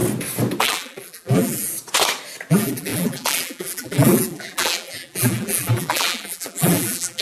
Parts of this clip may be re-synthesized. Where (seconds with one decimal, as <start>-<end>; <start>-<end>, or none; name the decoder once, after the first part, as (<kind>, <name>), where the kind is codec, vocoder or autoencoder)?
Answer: 0.6-1.7 (vocoder, BigVGAN v2); 2.5-7.2